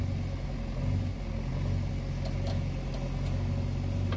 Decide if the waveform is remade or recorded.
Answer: recorded